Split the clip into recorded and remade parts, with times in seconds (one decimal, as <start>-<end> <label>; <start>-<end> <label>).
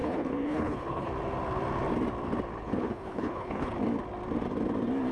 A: 0.0-1.1 remade; 1.1-2.6 recorded; 2.6-3.7 remade; 3.7-5.1 recorded